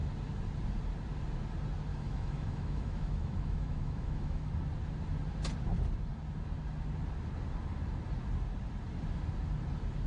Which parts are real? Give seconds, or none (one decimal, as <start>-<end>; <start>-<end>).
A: 0.0-1.9; 4.5-10.1